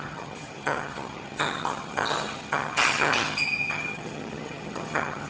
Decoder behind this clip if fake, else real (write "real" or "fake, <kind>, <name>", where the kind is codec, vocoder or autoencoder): fake, vocoder, HiFi-GAN